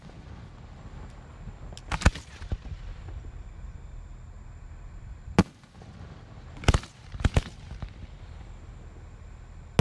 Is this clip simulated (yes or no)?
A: no